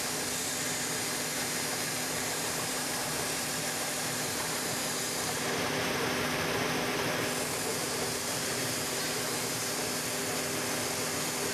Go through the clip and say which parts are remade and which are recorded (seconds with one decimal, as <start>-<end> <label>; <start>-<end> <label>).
0.0-1.3 recorded; 1.3-6.5 remade; 6.5-7.7 recorded; 7.7-9.2 remade; 9.2-11.5 recorded